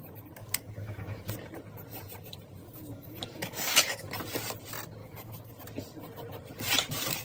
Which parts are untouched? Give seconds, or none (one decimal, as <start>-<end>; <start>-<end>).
0.0-0.4; 1.3-2.6; 4.1-5.0; 5.5-7.2